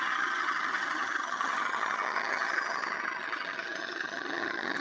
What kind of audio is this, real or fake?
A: fake